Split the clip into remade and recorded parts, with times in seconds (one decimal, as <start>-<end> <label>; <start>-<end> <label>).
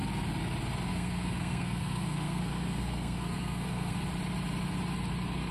0.0-0.9 recorded; 0.9-4.0 remade; 4.0-5.5 recorded